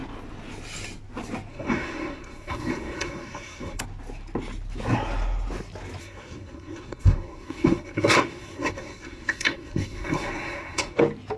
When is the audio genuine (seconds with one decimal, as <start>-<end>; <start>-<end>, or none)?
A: 0.0-1.5; 3.8-6.0; 11.0-11.4